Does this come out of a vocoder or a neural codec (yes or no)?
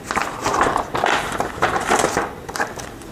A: yes